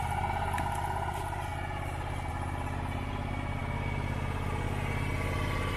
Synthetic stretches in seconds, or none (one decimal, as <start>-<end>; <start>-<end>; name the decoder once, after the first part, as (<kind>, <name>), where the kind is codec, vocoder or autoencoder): none